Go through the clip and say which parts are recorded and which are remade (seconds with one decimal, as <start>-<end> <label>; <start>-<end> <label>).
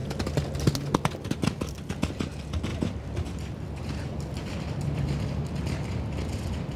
0.0-2.7 recorded; 2.7-6.8 remade